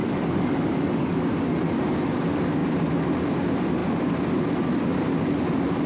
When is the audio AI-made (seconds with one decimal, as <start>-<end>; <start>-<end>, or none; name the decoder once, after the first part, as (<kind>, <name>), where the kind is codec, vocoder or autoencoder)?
0.0-1.3 (codec, DAC)